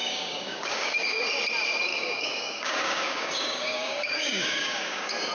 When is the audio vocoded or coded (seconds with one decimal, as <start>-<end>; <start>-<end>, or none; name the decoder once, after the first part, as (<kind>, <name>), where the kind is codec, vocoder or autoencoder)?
0.0-1.2 (codec, DAC); 1.9-5.3